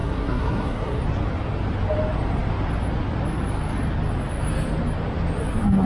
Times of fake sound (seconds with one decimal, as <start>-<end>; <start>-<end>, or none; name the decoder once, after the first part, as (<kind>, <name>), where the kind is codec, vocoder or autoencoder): 0.0-1.0 (codec, SNAC)